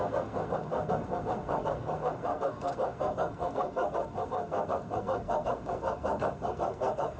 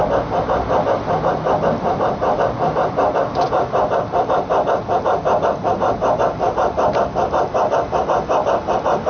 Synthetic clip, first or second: first